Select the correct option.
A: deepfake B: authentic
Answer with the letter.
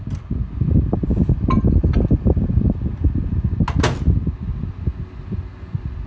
B